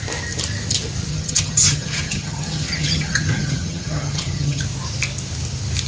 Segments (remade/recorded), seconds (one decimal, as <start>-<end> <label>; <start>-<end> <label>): 0.0-1.1 recorded; 1.1-4.6 remade; 4.6-5.9 recorded